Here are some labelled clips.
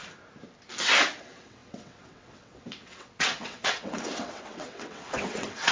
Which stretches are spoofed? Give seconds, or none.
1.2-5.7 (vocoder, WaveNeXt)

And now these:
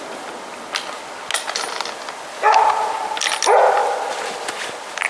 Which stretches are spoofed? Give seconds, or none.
none

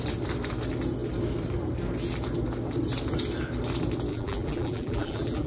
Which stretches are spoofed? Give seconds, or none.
4.1-5.5 (vocoder, BigVGAN v2)

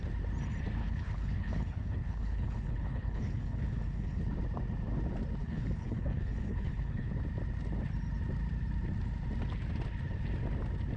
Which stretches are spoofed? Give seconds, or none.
0.8-4.3 (codec, HILCodec); 5.4-7.1

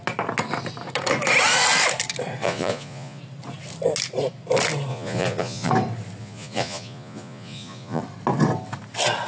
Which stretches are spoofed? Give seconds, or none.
2.4-3.2 (vocoder, Vocos); 4.9-5.7; 6.2-8.0

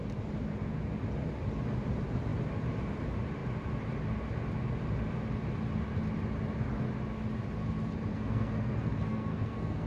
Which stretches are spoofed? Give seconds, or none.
8.1-9.9 (codec, SNAC)

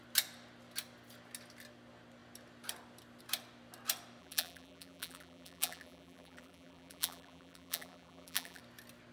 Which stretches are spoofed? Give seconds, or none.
4.2-8.6 (vocoder, BigVGAN v2)

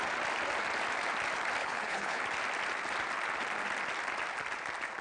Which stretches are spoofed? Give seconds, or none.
1.6-2.2 (codec, HILCodec)